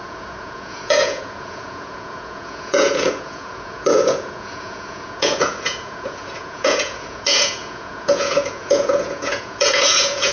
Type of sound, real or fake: fake